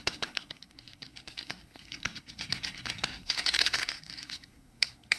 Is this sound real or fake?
fake